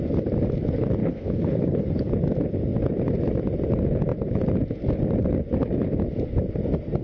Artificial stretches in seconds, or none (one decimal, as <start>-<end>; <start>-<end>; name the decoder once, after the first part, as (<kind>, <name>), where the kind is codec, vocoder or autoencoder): 1.0-2.1 (codec, HILCodec)